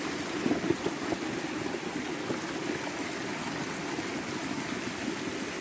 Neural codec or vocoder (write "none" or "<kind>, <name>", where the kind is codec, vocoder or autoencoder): none